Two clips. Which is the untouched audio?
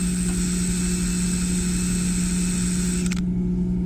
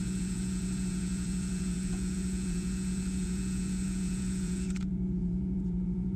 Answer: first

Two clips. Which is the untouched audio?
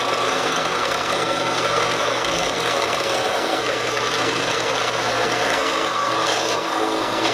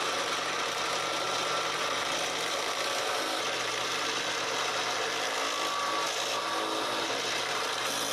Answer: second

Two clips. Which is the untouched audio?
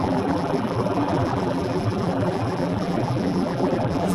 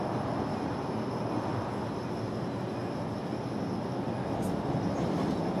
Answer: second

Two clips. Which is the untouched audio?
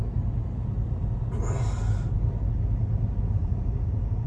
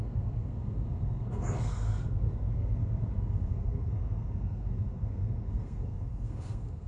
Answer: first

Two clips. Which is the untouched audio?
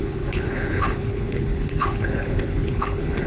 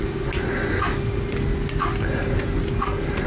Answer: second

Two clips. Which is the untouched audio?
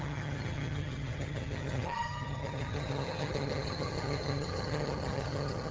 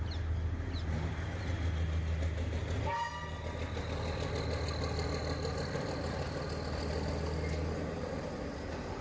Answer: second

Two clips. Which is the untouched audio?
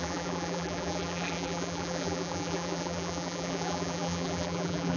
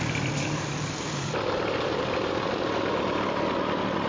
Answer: second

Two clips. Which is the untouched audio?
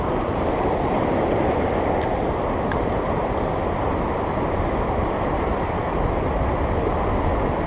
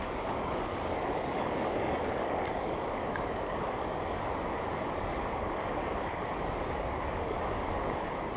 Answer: first